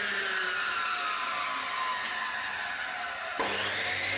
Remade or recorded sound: recorded